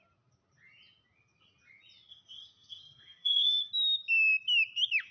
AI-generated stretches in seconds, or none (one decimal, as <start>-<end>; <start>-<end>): 2.1-3.7